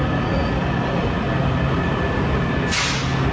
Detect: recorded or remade recorded